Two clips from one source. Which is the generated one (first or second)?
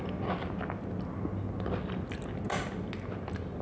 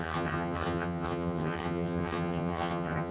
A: second